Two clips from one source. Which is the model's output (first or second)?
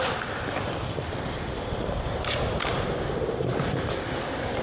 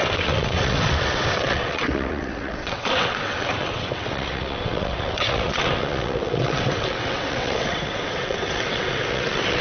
second